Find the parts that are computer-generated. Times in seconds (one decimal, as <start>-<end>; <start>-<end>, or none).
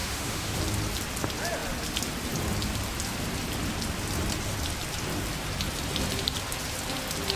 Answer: 0.0-0.6